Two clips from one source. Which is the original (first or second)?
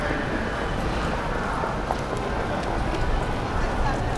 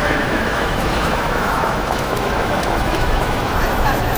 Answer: first